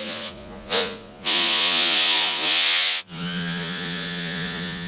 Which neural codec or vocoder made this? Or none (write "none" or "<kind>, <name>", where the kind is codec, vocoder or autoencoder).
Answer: vocoder, Vocos